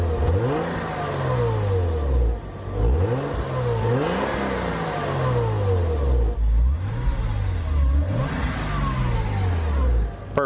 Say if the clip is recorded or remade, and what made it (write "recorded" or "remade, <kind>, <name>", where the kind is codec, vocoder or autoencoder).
recorded